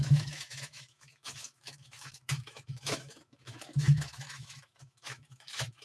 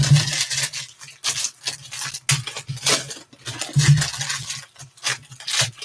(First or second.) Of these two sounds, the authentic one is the second